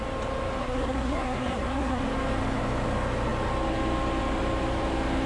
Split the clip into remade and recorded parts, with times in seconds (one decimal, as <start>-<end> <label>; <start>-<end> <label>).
0.0-0.6 recorded; 0.6-2.0 remade; 2.0-5.3 recorded